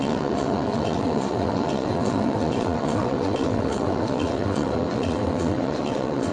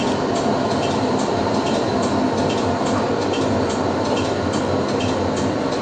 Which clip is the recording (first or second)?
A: second